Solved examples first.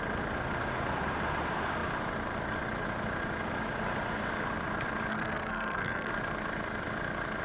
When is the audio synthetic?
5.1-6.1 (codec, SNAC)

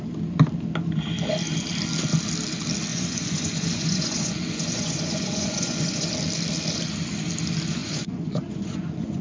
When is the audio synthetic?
2.9-6.1 (vocoder, Vocos); 7.8-9.2

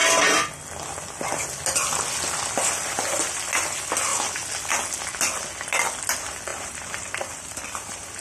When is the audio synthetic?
6.5-8.2 (vocoder, BigVGAN v2)

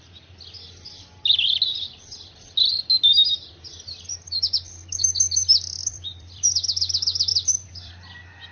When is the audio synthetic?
5.8-6.5 (vocoder, BigVGAN v2); 7.3-8.5